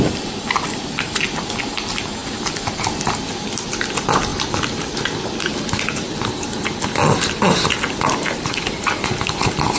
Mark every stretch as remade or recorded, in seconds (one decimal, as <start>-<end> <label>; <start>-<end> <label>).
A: 0.0-9.8 recorded